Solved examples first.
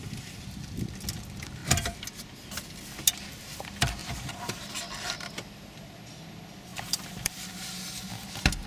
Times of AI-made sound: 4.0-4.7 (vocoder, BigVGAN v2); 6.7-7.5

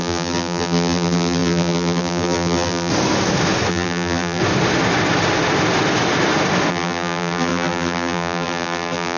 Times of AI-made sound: 0.0-2.9 (vocoder, BigVGAN v2); 3.7-4.4; 6.7-9.2

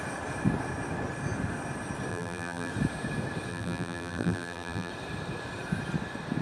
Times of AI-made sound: 2.1-2.7 (vocoder, BigVGAN v2); 3.5-4.9

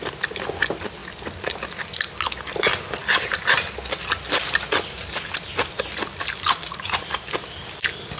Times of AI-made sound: 1.0-1.6 (vocoder, BigVGAN v2)

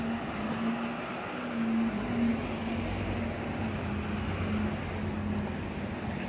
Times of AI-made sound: none